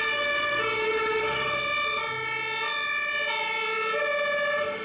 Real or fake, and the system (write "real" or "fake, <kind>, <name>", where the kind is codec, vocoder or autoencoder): real